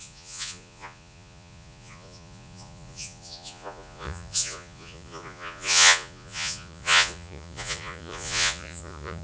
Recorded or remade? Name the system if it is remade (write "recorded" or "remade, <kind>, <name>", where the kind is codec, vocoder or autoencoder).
remade, vocoder, Vocos